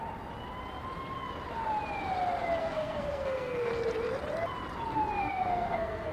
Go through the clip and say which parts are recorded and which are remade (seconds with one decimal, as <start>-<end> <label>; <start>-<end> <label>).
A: 0.0-2.6 recorded; 2.6-3.7 remade; 3.7-5.2 recorded; 5.2-6.1 remade